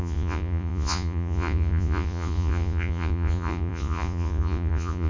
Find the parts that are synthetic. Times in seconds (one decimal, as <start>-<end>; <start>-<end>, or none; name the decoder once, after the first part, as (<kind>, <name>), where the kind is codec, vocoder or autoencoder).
0.0-5.1 (vocoder, Vocos)

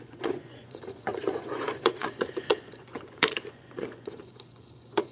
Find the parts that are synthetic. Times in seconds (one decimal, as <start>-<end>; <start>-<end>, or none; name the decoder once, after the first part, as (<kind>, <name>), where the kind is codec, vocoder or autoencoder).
0.0-5.1 (vocoder, Vocos)

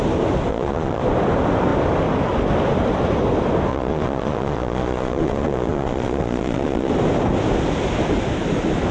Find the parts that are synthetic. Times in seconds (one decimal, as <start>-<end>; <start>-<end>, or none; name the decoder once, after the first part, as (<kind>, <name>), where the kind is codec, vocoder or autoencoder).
0.5-1.0 (vocoder, Vocos); 3.7-6.9